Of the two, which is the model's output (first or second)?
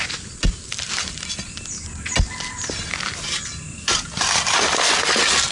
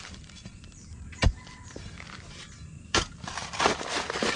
second